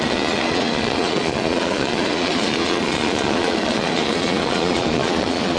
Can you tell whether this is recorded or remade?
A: remade